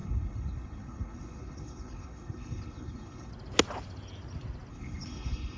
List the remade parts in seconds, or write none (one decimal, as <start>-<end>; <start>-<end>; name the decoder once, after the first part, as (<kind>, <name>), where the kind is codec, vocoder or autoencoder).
0.0-3.3 (codec, HILCodec); 4.7-5.6